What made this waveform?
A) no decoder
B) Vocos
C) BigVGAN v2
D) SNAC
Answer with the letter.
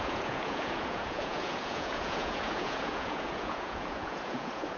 B